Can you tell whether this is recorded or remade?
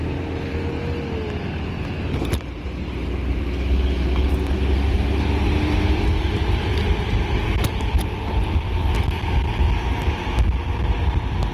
recorded